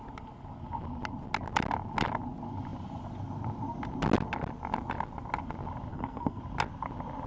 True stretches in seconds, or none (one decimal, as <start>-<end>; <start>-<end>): 0.0-5.9; 6.4-7.3